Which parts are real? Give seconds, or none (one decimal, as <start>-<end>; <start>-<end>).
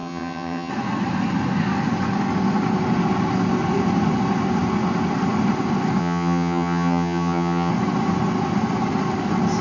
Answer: 0.7-6.0; 7.7-9.6